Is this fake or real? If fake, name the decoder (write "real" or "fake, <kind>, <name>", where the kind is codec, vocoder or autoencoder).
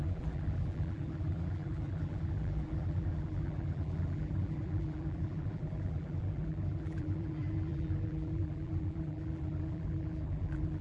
fake, vocoder, BigVGAN v2